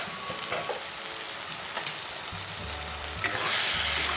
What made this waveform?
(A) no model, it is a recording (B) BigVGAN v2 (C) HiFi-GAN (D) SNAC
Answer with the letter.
A